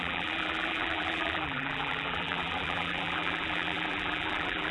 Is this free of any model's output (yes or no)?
no